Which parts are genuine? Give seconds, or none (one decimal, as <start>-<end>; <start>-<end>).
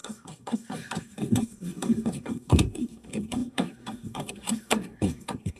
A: none